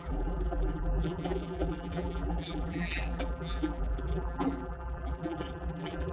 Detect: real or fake fake